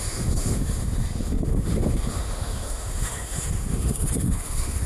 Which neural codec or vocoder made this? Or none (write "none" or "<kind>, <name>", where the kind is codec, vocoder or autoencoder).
autoencoder, DAC-VAE